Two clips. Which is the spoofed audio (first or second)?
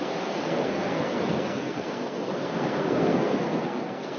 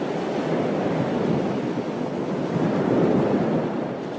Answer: first